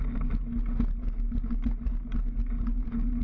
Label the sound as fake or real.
real